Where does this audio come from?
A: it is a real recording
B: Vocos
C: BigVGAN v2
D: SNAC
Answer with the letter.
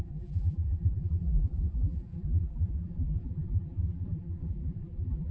C